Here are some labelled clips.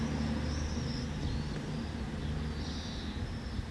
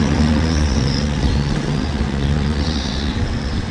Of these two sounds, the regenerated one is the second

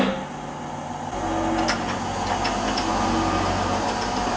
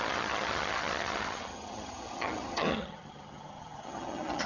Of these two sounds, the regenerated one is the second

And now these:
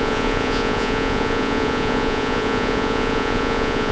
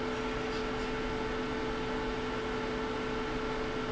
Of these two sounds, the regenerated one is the first